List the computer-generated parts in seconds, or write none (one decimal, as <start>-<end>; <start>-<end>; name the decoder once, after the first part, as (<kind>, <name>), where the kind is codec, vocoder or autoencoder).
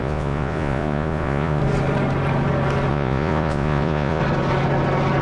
0.0-1.6 (vocoder, Vocos); 2.9-4.2